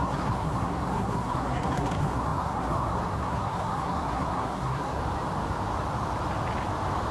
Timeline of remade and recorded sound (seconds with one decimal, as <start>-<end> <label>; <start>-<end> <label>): 0.0-5.0 remade; 5.0-7.1 recorded